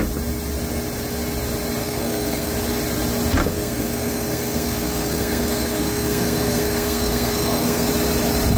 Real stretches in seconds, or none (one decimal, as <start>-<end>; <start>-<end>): 0.0-1.8; 2.5-3.4; 7.9-8.6